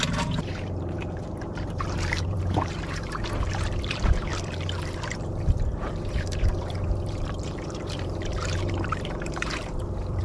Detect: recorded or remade remade